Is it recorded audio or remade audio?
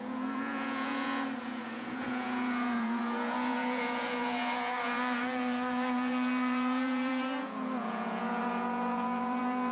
remade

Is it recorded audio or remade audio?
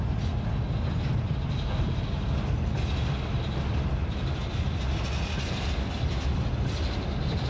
recorded